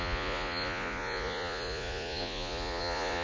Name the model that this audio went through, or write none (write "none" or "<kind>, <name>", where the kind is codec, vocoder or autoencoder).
vocoder, Vocos